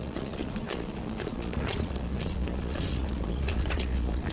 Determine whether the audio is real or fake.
fake